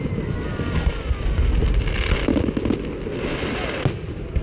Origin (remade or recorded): recorded